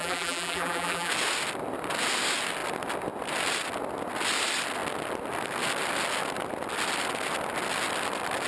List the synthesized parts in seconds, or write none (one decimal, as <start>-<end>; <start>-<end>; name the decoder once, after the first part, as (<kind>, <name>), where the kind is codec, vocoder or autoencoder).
0.0-1.1 (vocoder, BigVGAN v2)